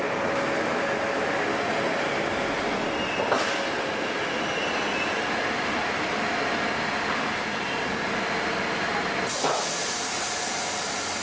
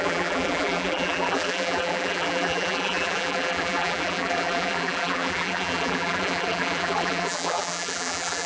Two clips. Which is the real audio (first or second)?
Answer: first